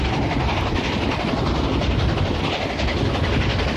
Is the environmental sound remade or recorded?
recorded